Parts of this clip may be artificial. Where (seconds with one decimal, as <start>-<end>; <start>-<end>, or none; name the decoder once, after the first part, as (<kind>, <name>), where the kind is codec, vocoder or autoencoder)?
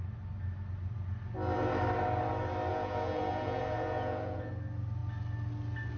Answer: 2.7-4.5 (vocoder, Vocos)